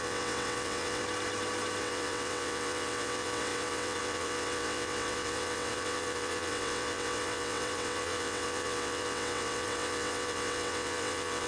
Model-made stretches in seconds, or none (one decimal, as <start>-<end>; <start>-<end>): 0.0-1.0; 1.8-11.5